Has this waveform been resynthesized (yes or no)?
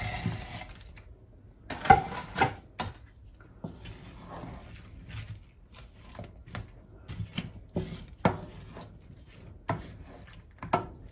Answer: no